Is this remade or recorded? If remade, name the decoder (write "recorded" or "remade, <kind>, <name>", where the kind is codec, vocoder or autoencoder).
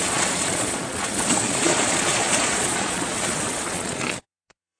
remade, vocoder, Vocos